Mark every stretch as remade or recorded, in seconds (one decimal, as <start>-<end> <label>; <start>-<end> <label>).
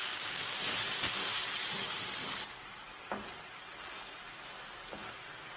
0.0-0.6 remade; 0.6-5.6 recorded